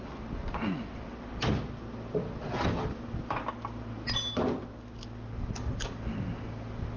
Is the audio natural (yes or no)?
yes